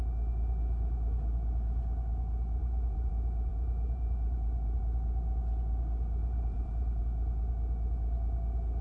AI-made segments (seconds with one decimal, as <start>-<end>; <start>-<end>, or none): 2.6-3.1; 3.5-4.8; 6.2-7.0